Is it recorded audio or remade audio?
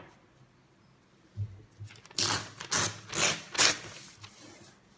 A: recorded